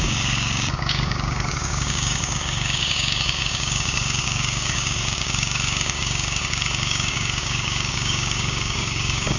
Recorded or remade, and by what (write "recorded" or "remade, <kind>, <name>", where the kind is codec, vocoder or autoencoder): remade, codec, DAC